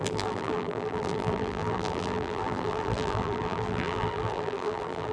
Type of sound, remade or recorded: remade